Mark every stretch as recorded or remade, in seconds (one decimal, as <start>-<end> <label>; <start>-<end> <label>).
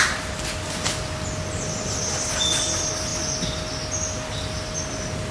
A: 0.0-5.3 recorded